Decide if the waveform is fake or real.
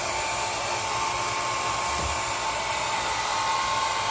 real